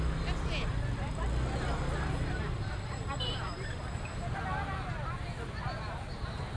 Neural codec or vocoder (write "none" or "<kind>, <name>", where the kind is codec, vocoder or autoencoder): none